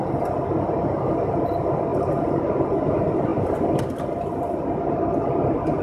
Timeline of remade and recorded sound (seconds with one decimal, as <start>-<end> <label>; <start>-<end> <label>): 0.0-1.9 recorded; 1.9-2.4 remade; 2.4-3.3 recorded; 3.3-3.8 remade; 3.8-5.8 recorded